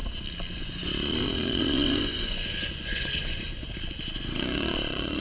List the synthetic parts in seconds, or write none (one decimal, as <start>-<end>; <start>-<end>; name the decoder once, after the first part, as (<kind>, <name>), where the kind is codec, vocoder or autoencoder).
0.6-5.2 (vocoder, Vocos)